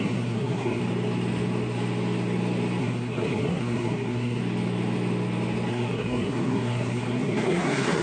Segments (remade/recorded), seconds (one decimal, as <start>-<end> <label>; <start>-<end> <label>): 0.0-0.8 remade; 0.8-2.8 recorded; 2.8-4.4 remade; 4.4-5.7 recorded; 5.7-8.0 remade